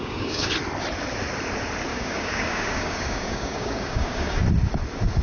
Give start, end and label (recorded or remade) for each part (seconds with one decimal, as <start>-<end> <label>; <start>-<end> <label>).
0.0-0.5 remade; 0.5-1.9 recorded; 1.9-4.4 remade; 4.4-5.2 recorded